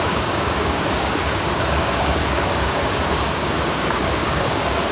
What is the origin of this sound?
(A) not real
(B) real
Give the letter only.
A